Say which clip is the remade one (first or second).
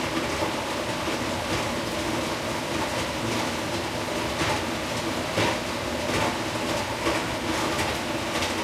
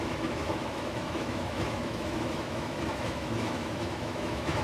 second